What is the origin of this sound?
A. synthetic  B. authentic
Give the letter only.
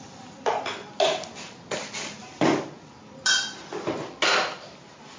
B